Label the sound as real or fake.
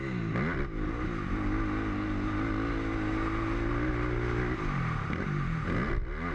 real